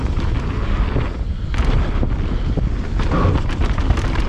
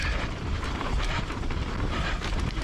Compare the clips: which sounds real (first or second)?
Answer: first